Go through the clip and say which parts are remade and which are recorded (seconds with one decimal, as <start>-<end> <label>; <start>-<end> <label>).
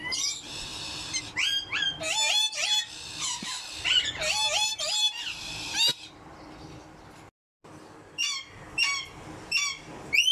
0.0-0.7 recorded; 0.7-1.2 remade; 1.2-5.0 recorded; 5.0-6.3 remade; 6.3-10.3 recorded